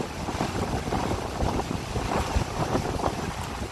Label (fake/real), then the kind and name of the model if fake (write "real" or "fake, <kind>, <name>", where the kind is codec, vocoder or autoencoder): real